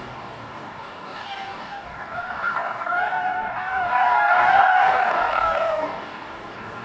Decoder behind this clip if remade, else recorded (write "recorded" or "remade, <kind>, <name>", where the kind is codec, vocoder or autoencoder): remade, codec, DAC